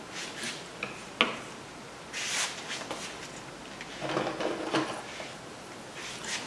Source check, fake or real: real